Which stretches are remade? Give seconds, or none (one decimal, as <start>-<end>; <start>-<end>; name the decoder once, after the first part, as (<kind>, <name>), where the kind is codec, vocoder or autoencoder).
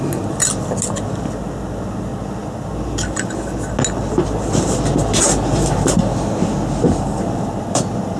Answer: none